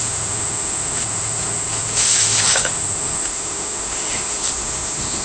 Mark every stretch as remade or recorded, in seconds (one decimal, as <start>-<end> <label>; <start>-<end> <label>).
0.0-5.2 remade